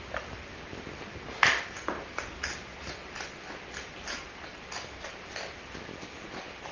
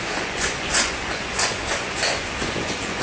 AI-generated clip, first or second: second